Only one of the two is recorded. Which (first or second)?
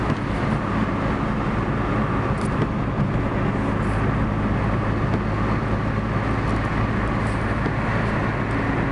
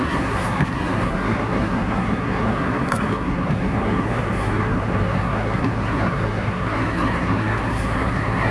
first